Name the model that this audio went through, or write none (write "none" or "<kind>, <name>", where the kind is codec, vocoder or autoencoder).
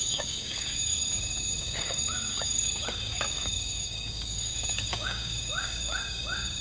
codec, DAC